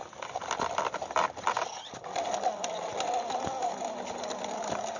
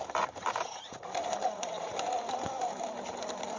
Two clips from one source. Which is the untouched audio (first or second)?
first